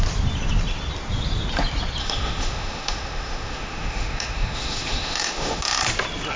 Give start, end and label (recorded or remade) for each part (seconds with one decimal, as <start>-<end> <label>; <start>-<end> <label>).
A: 0.0-2.0 recorded; 2.0-5.8 remade; 5.8-6.4 recorded